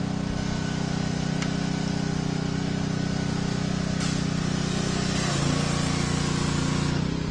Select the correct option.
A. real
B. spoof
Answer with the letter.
A